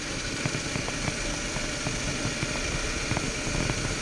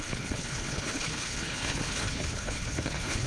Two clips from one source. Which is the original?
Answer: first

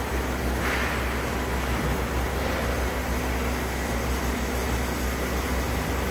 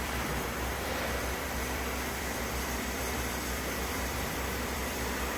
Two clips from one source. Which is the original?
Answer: first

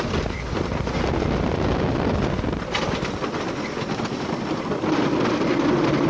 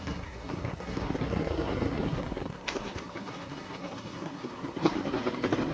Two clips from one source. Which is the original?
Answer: first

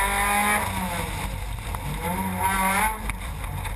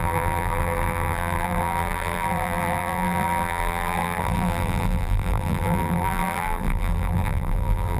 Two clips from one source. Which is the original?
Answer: first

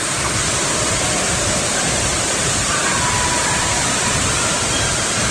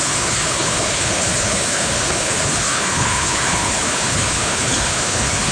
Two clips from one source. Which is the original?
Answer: first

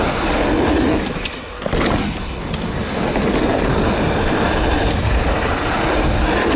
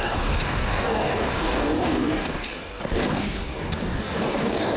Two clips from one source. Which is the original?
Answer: first